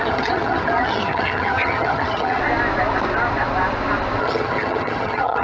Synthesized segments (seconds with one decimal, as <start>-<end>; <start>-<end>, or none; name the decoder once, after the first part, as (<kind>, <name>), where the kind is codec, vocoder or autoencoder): 0.0-2.4 (vocoder, HiFi-GAN); 4.2-5.4